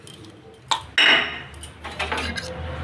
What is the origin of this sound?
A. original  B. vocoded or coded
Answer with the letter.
A